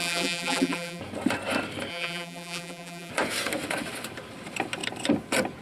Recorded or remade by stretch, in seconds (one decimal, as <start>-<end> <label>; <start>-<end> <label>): 0.0-1.0 remade; 1.0-1.9 recorded; 1.9-3.1 remade; 3.1-5.6 recorded